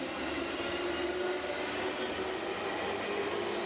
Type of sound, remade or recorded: recorded